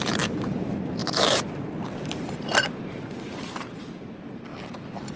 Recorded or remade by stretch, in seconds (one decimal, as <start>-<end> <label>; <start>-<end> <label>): 0.0-4.5 remade; 4.5-5.2 recorded